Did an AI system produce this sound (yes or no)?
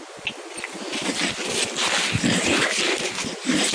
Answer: no